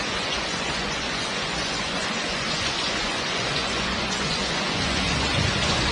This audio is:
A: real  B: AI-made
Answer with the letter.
B